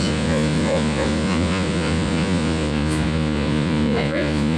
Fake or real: fake